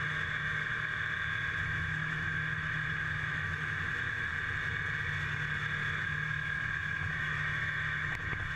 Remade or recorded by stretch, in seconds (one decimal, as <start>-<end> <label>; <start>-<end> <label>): 0.0-0.6 remade; 0.6-1.6 recorded; 1.6-4.3 remade; 4.3-6.0 recorded; 6.0-8.6 remade